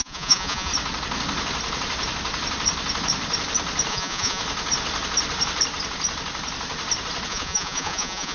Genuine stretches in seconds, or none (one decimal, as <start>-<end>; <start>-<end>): 0.7-3.9; 4.4-7.3

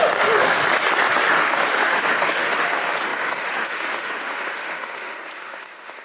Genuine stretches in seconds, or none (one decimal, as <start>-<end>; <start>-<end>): 0.6-1.3

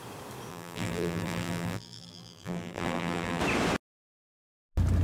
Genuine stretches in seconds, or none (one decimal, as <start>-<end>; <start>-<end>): 0.0-0.5; 3.4-5.0

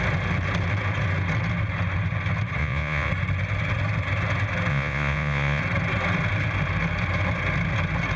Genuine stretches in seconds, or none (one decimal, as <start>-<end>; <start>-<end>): 0.0-2.6; 3.1-4.7; 5.6-8.2

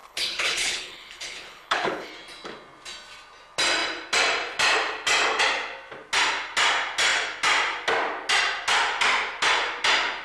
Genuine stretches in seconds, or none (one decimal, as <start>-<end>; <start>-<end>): 2.1-10.2

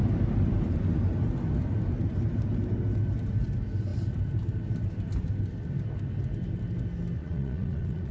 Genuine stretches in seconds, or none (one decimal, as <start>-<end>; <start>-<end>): 0.0-7.2